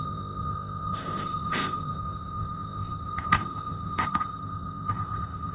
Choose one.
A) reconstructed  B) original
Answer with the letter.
A